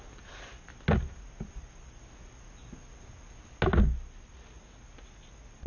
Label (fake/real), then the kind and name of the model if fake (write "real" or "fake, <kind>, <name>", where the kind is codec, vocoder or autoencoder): real